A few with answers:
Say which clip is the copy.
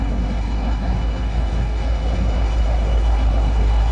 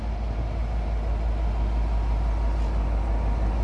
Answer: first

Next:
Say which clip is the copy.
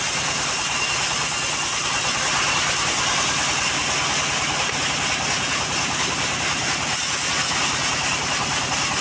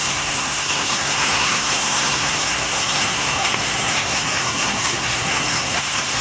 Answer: second